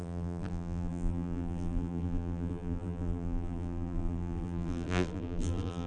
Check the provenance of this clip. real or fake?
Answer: fake